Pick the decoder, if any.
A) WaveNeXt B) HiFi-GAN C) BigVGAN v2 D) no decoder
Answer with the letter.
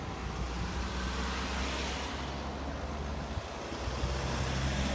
D